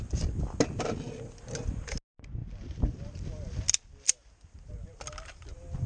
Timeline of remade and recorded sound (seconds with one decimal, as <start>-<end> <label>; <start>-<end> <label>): 0.0-5.9 recorded